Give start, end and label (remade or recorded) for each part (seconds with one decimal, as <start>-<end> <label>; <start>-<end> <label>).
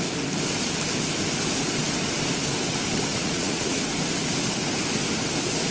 0.0-3.1 recorded; 3.1-3.8 remade; 3.8-5.7 recorded